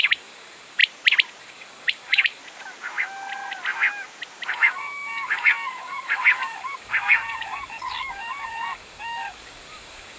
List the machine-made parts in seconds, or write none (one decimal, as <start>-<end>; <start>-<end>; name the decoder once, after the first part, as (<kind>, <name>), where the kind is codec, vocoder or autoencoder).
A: 0.0-0.8 (codec, DAC); 1.4-2.4; 4.5-10.2